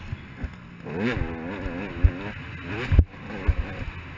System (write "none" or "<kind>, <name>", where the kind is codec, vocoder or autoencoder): none